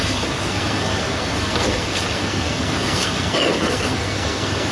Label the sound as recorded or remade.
remade